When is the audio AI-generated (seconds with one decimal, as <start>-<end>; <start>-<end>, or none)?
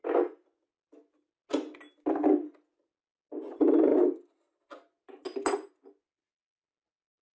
3.9-4.6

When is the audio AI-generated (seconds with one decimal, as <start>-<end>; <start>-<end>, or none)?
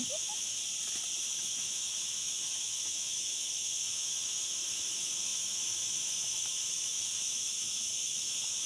0.0-0.6; 1.2-8.7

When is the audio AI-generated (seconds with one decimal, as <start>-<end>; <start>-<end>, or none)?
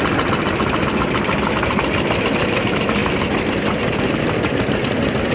none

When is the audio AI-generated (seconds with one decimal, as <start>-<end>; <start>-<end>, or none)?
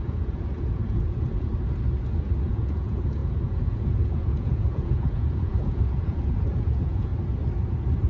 0.0-1.5; 2.5-7.1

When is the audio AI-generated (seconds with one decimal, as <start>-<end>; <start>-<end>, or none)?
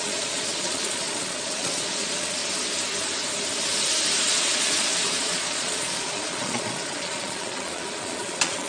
0.0-2.4; 4.2-8.7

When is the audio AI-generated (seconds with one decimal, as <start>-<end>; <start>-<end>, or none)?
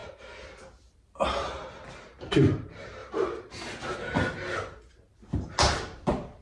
0.0-1.5; 3.0-3.6